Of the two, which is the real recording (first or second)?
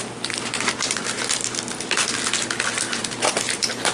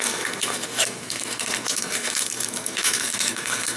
first